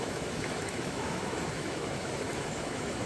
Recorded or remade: remade